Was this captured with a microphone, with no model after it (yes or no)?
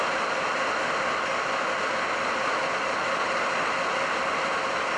yes